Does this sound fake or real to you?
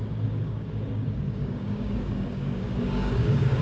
fake